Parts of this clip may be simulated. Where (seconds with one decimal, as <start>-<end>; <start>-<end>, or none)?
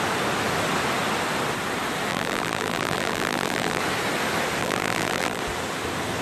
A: 2.1-3.8; 4.6-5.4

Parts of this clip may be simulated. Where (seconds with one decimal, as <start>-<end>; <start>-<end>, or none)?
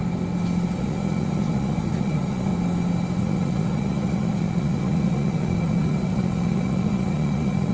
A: 0.8-2.5; 3.2-7.7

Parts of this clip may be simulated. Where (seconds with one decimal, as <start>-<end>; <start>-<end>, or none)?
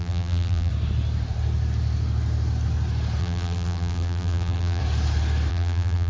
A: 0.0-0.7; 3.2-4.8; 5.5-6.1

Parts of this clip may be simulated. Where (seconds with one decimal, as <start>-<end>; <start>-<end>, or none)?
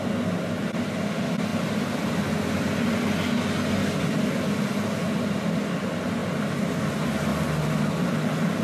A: none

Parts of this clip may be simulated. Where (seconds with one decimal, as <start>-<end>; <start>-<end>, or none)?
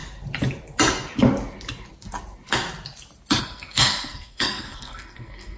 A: 3.4-5.6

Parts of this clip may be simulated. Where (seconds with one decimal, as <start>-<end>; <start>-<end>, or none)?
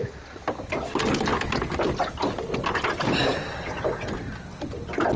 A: none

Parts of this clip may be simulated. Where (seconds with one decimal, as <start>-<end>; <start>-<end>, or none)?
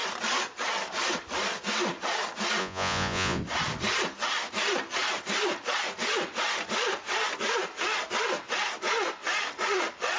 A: 2.6-3.4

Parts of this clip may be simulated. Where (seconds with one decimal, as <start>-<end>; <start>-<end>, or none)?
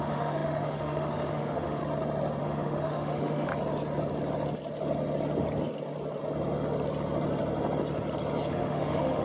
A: 0.0-1.8; 2.4-3.5; 8.5-9.2